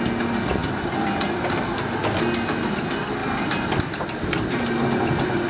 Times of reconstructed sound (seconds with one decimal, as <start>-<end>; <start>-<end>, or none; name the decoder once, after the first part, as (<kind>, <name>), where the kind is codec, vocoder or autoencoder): 0.6-1.8 (vocoder, BigVGAN v2); 3.2-4.8